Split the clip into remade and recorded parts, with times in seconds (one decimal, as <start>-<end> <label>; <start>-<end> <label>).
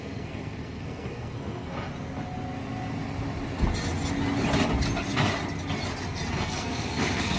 0.0-1.9 remade; 1.9-6.3 recorded; 6.3-7.4 remade